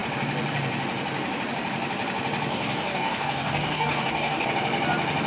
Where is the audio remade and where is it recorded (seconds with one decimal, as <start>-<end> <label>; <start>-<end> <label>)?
0.0-2.5 recorded; 2.5-4.5 remade; 4.5-5.3 recorded